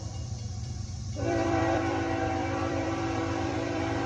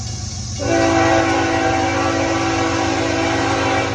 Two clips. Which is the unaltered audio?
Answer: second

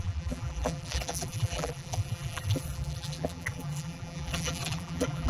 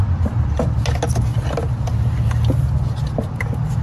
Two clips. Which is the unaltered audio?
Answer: second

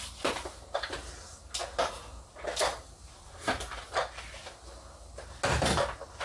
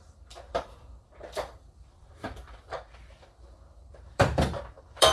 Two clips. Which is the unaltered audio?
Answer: first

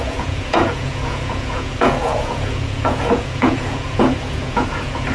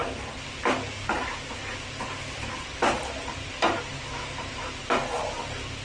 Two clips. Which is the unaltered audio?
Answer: second